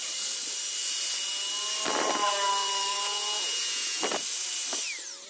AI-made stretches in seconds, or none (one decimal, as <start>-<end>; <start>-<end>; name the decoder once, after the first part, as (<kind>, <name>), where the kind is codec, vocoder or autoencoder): 2.9-4.0 (vocoder, Vocos)